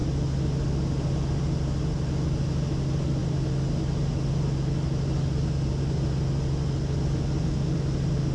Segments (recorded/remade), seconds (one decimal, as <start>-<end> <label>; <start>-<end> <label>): 0.0-8.3 recorded